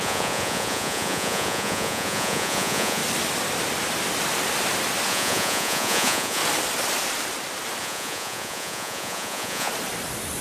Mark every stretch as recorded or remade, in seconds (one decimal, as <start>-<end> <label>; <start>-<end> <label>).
0.0-3.0 remade; 3.0-5.1 recorded; 5.1-6.4 remade; 6.4-7.8 recorded; 7.8-9.7 remade; 9.7-10.4 recorded